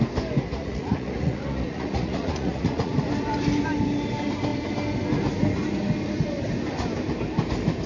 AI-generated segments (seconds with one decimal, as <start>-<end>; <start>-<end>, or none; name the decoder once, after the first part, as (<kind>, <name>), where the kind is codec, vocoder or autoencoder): 0.6-3.0 (vocoder, Vocos)